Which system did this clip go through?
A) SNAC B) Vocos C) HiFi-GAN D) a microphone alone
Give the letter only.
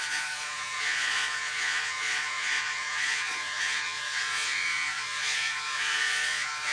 B